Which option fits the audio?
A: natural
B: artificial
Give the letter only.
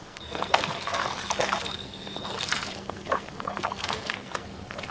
B